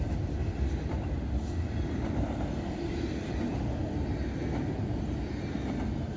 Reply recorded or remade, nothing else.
recorded